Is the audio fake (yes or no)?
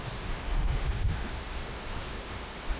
yes